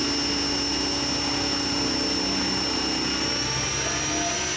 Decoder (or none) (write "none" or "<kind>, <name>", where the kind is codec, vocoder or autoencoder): none